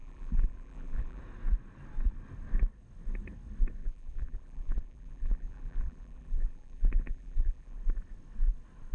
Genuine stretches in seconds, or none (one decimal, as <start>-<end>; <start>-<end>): 1.2-3.8; 7.8-8.9